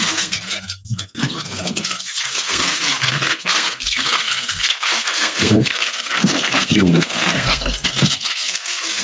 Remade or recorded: remade